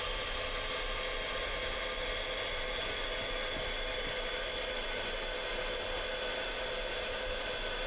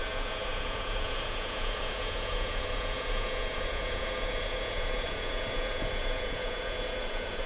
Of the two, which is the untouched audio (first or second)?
first